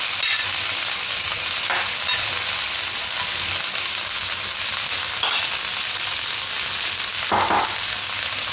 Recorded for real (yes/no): yes